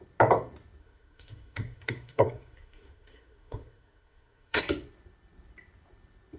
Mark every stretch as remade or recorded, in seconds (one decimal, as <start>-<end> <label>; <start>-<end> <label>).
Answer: 0.0-0.8 recorded; 0.8-4.6 remade; 4.6-6.4 recorded